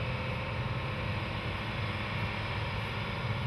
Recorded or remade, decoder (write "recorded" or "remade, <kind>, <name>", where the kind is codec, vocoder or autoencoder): recorded